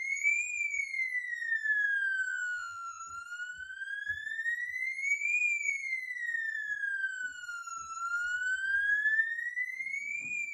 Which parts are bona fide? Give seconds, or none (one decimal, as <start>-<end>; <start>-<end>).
0.0-2.3; 3.0-10.5